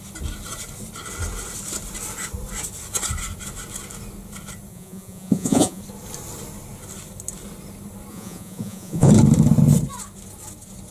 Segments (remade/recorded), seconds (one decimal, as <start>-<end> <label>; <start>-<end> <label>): 0.0-4.7 recorded; 4.7-5.8 remade; 5.8-8.1 recorded; 8.1-9.1 remade; 9.1-10.9 recorded